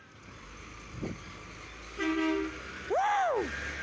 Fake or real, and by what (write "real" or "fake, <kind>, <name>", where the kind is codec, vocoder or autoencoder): real